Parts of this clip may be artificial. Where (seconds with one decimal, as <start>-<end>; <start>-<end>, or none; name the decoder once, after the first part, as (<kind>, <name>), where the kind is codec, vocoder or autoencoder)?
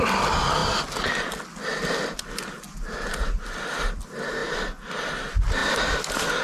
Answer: none